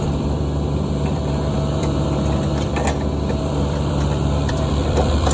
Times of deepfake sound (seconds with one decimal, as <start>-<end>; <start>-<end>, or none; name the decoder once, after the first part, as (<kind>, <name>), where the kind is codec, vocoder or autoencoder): 0.0-2.7 (vocoder, BigVGAN v2); 3.3-5.3